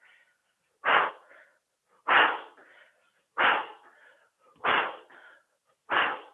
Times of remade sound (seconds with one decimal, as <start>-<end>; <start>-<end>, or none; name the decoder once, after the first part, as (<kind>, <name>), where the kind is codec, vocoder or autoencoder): none